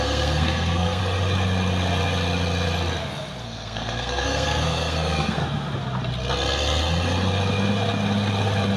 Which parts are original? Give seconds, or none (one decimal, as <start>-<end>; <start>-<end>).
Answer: 1.0-3.4; 5.4-8.8